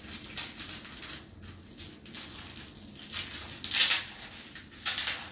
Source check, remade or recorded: recorded